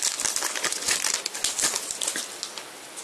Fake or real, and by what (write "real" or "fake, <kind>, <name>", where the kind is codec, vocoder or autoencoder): real